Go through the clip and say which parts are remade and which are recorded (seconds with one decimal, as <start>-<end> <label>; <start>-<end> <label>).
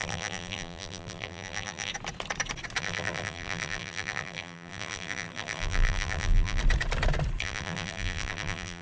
0.0-1.9 remade; 1.9-2.8 recorded; 2.8-6.6 remade; 6.6-7.4 recorded; 7.4-8.8 remade